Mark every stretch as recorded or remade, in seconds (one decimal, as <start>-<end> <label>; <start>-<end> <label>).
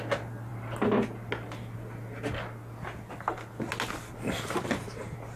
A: 0.0-5.4 recorded